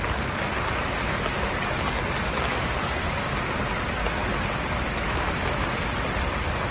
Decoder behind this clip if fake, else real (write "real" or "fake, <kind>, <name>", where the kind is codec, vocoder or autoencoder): real